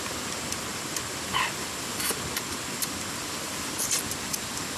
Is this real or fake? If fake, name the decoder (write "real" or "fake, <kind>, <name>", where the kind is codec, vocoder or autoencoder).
fake, vocoder, BigVGAN v2